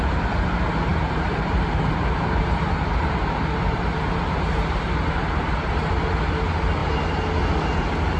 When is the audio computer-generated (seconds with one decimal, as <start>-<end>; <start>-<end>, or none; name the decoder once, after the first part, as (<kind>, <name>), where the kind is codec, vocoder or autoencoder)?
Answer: 0.9-5.7 (vocoder, BigVGAN v2)